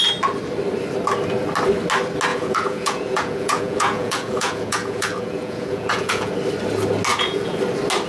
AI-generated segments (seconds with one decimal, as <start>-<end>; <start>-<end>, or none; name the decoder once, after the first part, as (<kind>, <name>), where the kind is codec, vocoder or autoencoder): 2.3-6.3 (vocoder, Vocos); 7.1-7.6